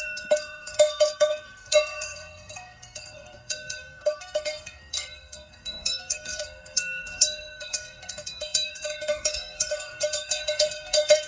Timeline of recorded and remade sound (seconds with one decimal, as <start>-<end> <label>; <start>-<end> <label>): 0.0-11.3 remade